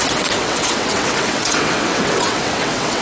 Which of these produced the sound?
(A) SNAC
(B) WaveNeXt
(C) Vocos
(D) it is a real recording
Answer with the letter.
B